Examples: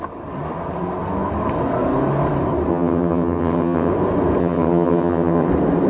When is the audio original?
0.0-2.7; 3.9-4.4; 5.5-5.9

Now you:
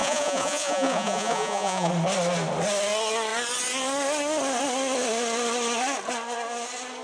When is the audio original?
1.9-7.0

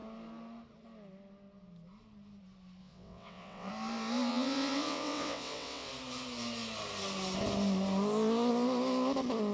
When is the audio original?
0.0-2.8; 3.7-4.3; 5.9-9.5

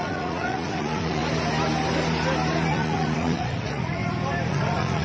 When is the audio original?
1.2-2.7; 4.0-4.5

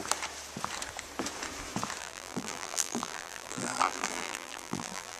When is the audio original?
0.0-2.0